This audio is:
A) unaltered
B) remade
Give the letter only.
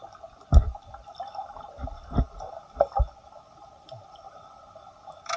A